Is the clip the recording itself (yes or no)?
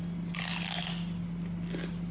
yes